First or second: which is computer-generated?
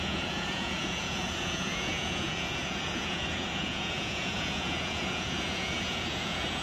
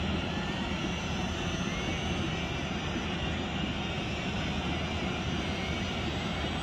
first